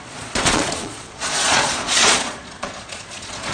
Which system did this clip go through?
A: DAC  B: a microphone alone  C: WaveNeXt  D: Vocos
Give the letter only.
D